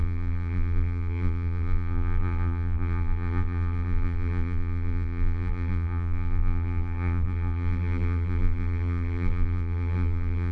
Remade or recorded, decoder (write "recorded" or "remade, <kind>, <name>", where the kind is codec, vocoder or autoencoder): remade, vocoder, BigVGAN v2